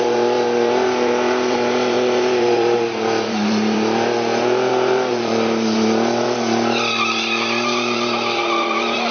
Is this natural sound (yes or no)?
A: no